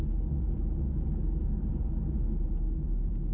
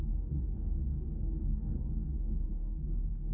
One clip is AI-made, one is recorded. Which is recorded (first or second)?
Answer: first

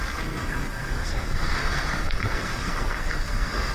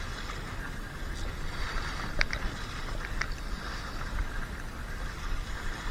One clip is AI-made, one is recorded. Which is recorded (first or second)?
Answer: second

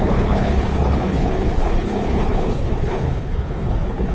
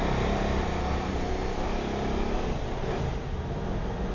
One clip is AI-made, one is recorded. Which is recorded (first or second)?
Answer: second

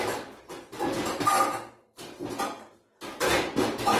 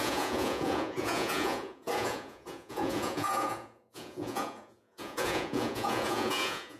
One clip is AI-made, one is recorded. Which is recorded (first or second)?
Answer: first